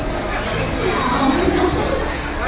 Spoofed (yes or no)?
no